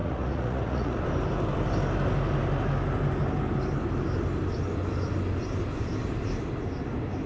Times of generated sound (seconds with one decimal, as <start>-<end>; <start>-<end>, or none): 0.0-1.0